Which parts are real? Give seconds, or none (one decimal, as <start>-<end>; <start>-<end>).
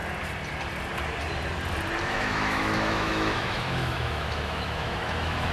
0.0-2.0